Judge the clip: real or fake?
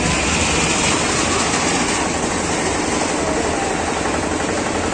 real